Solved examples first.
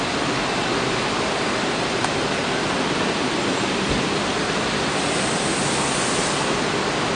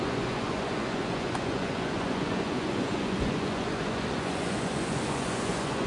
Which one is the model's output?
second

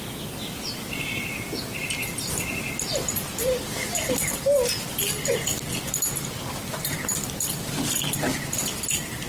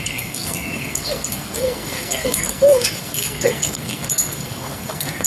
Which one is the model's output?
second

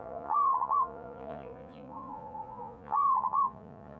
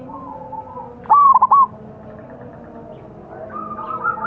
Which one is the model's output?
first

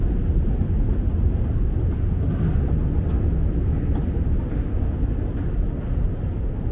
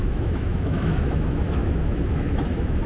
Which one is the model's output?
second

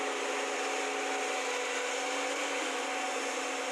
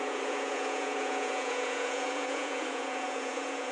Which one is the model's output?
second